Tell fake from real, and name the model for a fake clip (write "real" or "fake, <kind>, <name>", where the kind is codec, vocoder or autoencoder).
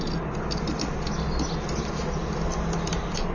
real